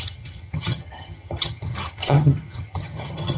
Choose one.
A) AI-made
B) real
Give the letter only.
A